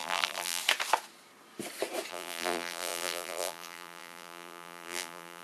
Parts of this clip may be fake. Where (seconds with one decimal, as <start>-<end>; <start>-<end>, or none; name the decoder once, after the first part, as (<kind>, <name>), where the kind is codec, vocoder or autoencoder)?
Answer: 0.0-0.6 (vocoder, BigVGAN v2); 2.1-5.4